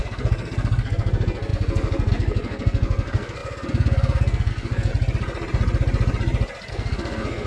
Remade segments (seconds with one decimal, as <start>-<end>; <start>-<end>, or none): 0.0-4.9; 6.7-7.5